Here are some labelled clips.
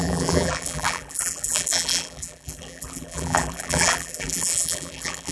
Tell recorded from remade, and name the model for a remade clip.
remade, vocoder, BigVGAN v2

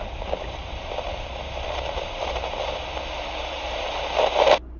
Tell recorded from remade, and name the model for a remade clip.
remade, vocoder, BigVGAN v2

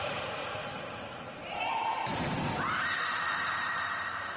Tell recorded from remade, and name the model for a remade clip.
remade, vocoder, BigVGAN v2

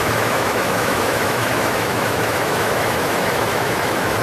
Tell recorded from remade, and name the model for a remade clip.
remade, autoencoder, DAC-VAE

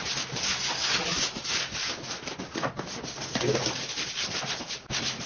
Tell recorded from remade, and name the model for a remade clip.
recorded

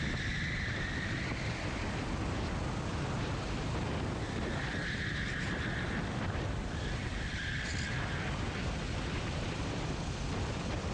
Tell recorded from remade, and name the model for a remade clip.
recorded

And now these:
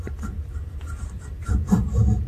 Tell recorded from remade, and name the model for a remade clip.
recorded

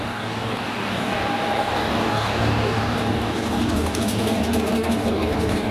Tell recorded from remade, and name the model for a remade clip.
remade, codec, DAC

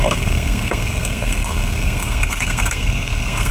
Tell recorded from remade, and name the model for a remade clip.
remade, codec, SNAC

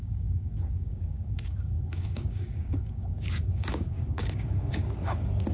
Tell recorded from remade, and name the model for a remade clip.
remade, codec, DAC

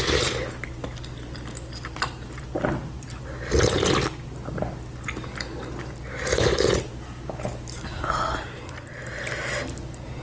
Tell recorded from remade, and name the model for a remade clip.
recorded